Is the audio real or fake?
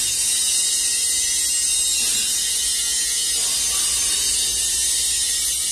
real